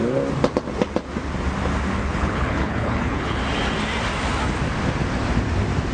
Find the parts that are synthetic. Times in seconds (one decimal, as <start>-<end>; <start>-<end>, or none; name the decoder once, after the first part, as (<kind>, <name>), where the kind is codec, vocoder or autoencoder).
2.0-3.4 (codec, HILCodec)